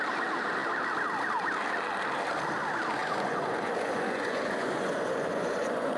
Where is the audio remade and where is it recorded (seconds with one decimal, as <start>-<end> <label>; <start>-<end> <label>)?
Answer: 0.0-3.0 recorded; 3.0-6.0 remade